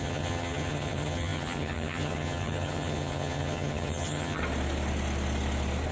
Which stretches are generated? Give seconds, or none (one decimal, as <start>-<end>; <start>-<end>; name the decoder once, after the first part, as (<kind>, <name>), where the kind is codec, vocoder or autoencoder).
0.0-4.4 (vocoder, HiFi-GAN)